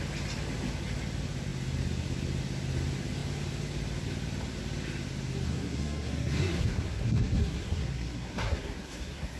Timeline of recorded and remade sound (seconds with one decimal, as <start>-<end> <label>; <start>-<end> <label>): 0.0-5.5 recorded; 5.5-9.4 remade